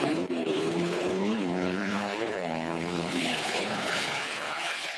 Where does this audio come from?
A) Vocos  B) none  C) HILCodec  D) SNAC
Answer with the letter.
C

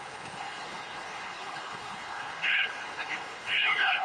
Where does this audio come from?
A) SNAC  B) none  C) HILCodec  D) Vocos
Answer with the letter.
C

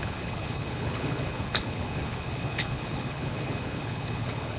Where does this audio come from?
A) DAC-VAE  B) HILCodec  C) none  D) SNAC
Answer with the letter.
B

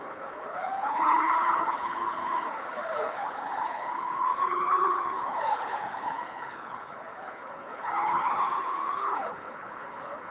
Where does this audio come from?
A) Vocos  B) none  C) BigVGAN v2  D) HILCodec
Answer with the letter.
D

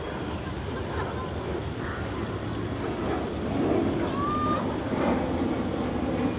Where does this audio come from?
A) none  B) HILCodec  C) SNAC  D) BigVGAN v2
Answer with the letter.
A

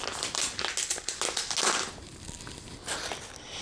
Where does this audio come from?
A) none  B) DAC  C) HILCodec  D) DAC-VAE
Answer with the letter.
A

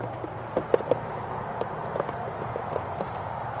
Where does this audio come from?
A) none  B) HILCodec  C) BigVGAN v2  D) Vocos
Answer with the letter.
A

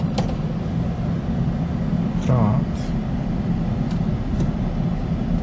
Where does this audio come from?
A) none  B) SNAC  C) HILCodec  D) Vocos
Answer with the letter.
A